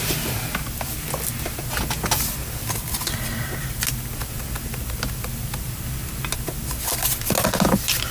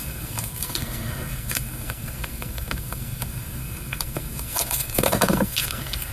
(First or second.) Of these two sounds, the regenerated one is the second